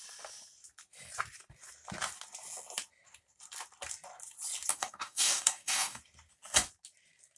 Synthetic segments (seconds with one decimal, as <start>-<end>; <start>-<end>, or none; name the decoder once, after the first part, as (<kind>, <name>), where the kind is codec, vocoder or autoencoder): 4.7-6.0 (codec, DAC)